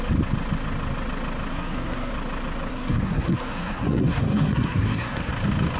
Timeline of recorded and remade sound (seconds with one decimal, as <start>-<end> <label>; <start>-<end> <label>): 0.0-1.5 recorded; 1.5-2.1 remade; 2.1-2.7 recorded; 2.7-5.3 remade; 5.3-5.8 recorded